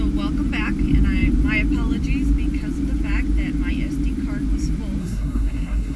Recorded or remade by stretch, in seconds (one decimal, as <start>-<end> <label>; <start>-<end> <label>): 0.0-5.0 recorded; 5.0-6.0 remade